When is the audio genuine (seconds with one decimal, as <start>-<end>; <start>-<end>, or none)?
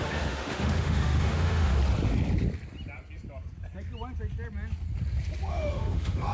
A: 1.7-5.5